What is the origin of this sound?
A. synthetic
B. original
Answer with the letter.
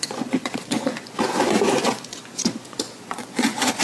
A